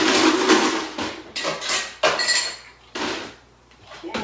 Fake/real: real